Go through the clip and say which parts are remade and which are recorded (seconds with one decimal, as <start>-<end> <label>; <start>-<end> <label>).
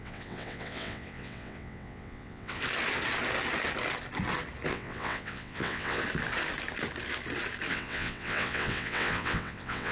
0.0-2.6 remade; 2.6-4.7 recorded; 4.7-6.0 remade; 6.0-7.7 recorded; 7.7-9.9 remade